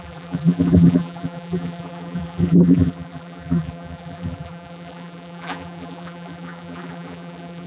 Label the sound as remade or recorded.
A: remade